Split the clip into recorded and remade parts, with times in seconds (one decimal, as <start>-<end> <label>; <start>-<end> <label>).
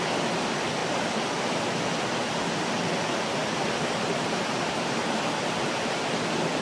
0.0-3.4 recorded; 3.4-4.9 remade; 4.9-6.6 recorded